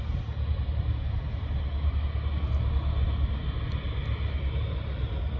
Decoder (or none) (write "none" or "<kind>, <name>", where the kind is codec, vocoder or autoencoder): none